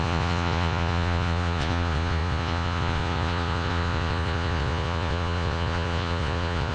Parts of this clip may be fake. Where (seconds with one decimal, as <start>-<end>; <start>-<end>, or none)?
0.0-6.7